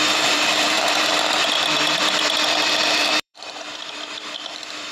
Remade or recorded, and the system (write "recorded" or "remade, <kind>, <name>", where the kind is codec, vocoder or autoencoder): remade, vocoder, BigVGAN v2